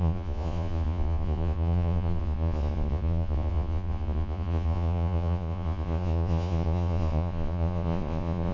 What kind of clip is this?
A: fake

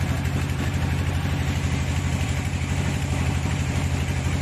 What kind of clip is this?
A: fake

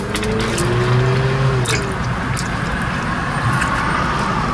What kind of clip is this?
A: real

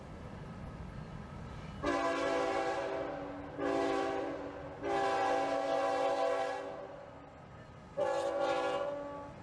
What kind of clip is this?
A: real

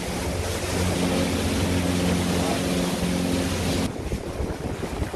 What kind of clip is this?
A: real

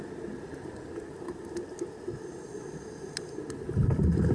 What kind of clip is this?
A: real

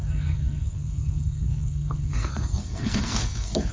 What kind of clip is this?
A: fake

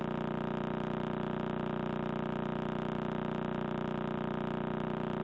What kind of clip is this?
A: real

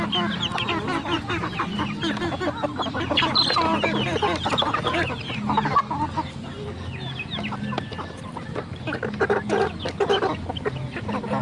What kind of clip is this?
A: real